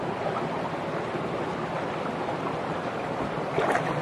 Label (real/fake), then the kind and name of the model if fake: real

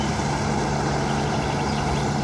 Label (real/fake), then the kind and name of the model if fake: real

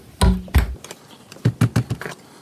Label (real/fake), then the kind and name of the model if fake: real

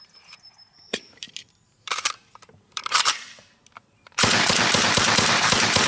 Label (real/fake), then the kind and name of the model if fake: fake, vocoder, BigVGAN v2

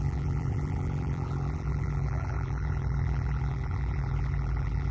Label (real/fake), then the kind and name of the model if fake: fake, vocoder, BigVGAN v2